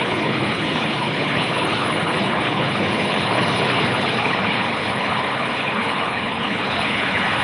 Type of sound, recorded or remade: remade